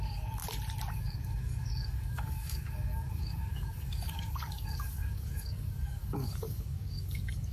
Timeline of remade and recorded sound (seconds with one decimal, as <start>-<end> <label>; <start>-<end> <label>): 0.0-0.4 remade; 0.4-0.9 recorded; 0.9-7.5 remade